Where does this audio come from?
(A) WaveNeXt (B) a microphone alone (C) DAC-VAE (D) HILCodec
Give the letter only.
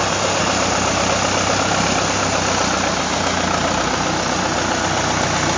B